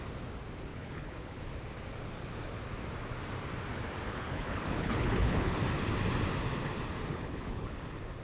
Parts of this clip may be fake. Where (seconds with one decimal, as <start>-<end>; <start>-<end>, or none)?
0.7-1.4; 4.1-5.6; 7.1-7.7